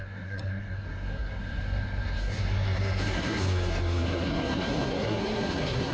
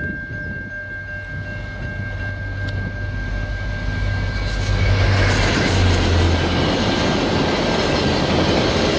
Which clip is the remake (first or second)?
first